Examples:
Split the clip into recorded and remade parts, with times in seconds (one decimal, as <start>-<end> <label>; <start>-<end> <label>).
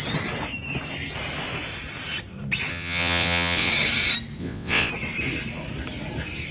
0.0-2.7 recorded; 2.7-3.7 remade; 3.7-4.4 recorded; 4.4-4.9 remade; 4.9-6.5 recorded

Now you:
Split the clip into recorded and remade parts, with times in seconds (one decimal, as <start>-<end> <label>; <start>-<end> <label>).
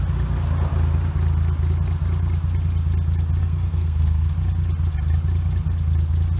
0.0-3.4 recorded; 3.4-4.3 remade; 4.3-6.4 recorded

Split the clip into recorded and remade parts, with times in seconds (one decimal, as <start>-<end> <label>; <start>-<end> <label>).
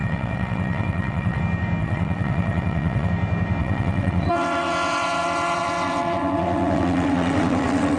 0.0-1.4 remade; 1.4-1.8 recorded; 1.8-3.1 remade; 3.1-3.6 recorded; 3.6-8.0 remade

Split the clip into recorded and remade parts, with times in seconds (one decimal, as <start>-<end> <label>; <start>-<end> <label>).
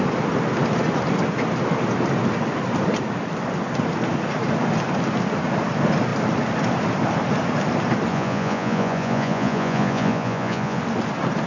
0.0-8.1 recorded; 8.1-10.8 remade; 10.8-11.5 recorded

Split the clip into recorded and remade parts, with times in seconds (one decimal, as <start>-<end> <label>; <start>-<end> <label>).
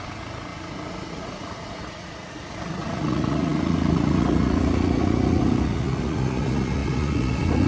0.0-7.7 remade